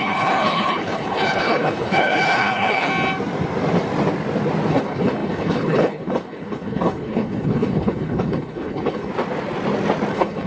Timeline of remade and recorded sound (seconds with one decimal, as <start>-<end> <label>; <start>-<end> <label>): 0.0-2.9 remade; 2.9-4.7 recorded; 4.7-9.1 remade; 9.1-10.1 recorded; 10.1-10.5 remade